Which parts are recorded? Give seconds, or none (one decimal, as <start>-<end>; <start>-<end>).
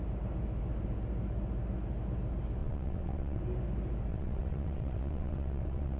0.0-2.6; 3.4-4.1